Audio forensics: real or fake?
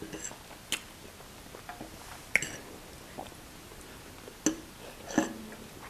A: real